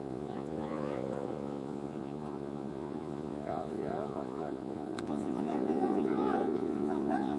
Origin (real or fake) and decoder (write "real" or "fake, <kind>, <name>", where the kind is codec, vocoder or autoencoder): fake, vocoder, Vocos